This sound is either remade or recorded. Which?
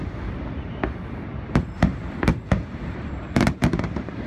remade